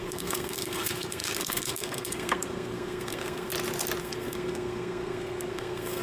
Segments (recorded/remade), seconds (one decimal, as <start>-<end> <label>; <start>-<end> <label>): 0.0-3.5 remade; 3.5-4.0 recorded; 4.0-6.0 remade

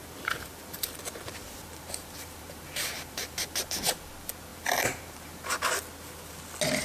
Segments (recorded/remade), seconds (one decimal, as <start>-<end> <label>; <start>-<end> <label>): 0.0-4.1 remade; 4.1-4.5 recorded; 4.5-5.7 remade; 5.7-6.8 recorded